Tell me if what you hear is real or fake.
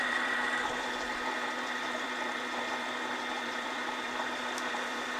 fake